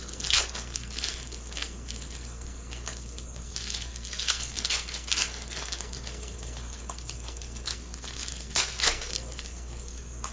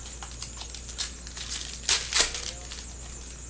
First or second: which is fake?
first